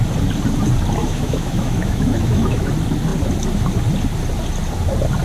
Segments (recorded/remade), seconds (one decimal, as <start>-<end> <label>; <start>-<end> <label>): 0.0-1.0 recorded; 1.0-2.7 remade; 2.7-5.2 recorded